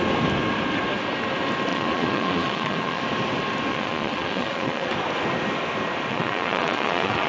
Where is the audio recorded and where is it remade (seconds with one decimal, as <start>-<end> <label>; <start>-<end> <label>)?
0.0-1.7 recorded; 1.7-3.0 remade; 3.0-3.7 recorded; 3.7-4.9 remade; 4.9-6.1 recorded; 6.1-7.3 remade